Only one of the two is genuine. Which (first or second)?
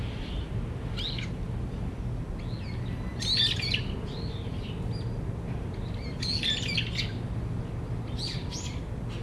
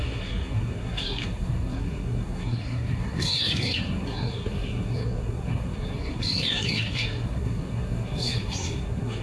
first